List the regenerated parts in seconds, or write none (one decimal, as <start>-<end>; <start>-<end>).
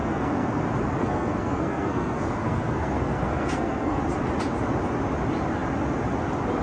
0.0-0.6; 1.0-4.0